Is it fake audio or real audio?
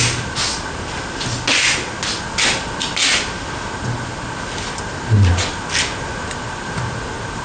real